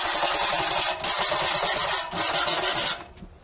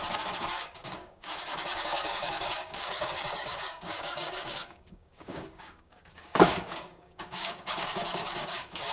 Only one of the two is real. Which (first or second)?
first